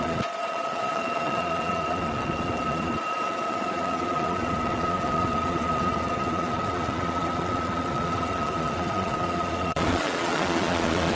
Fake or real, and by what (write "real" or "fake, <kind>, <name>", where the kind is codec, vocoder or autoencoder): fake, vocoder, Vocos